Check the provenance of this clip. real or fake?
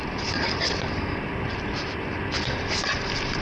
real